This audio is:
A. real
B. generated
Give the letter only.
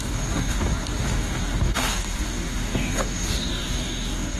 B